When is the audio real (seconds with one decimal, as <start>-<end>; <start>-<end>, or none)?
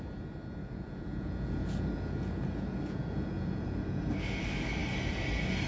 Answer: 0.0-0.6; 4.0-5.7